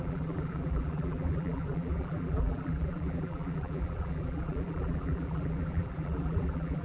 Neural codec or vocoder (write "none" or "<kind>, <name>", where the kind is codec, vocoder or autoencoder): vocoder, BigVGAN v2